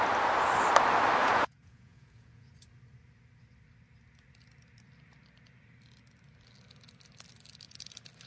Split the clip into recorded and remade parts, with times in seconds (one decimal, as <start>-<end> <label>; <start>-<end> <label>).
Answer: 0.0-1.2 recorded; 1.2-2.5 remade; 2.5-8.3 recorded